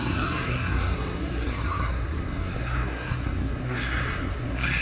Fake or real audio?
fake